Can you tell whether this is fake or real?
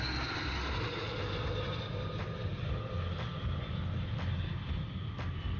real